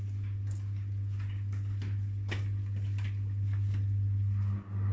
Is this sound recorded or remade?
recorded